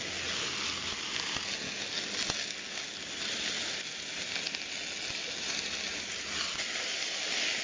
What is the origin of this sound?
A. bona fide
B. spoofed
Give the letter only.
A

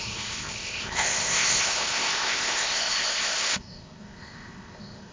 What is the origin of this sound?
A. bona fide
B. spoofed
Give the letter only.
B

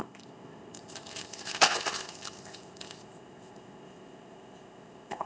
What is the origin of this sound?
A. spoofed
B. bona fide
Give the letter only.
A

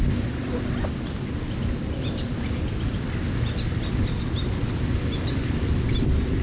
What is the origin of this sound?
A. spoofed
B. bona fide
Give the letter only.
B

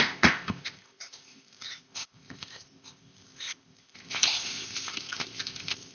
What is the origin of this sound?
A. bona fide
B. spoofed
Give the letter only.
B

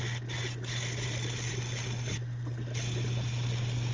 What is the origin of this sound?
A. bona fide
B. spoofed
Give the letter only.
A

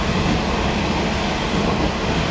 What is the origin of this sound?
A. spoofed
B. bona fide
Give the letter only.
B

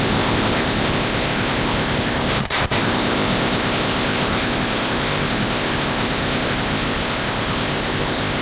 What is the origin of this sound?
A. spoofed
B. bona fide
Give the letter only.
A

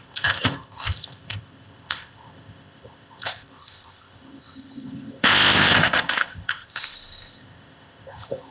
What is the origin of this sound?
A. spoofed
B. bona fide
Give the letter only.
A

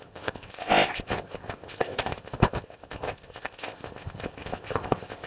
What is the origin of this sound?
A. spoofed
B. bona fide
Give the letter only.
A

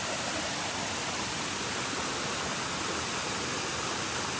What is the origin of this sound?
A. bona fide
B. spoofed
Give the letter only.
A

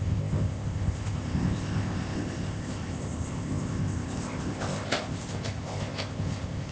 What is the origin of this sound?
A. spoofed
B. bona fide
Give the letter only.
A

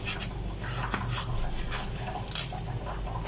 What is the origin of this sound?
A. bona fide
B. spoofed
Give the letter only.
A